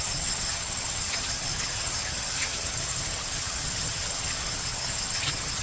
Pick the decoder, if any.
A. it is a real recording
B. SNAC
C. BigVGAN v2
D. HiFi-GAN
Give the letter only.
D